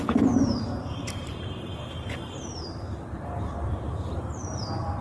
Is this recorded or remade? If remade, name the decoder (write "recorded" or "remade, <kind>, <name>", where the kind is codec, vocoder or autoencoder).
remade, vocoder, BigVGAN v2